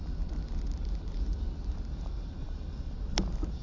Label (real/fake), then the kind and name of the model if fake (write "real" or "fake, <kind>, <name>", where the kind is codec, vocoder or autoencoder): real